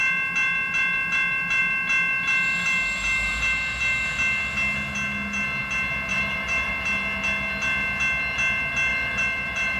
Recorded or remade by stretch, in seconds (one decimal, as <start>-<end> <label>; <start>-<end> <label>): 0.0-6.1 recorded; 6.1-6.7 remade; 6.7-8.9 recorded; 8.9-9.8 remade